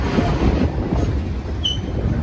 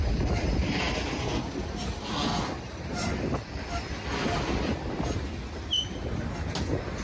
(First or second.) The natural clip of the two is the second